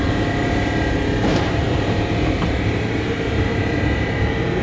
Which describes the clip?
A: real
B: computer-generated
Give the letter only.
B